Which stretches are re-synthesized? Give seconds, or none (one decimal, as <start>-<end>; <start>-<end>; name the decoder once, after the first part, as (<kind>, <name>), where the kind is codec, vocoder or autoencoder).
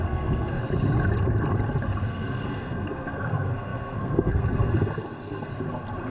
0.0-0.6 (codec, SNAC); 2.1-5.5